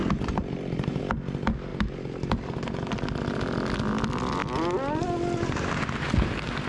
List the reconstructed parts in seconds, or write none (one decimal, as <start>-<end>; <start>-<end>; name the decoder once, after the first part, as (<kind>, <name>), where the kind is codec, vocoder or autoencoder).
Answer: 0.0-1.0 (vocoder, BigVGAN v2); 1.7-2.9